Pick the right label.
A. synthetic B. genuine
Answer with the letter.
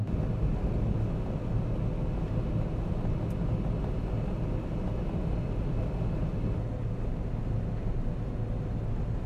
B